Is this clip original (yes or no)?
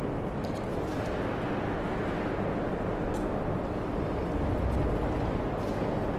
yes